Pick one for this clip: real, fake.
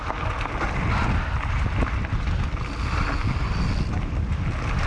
real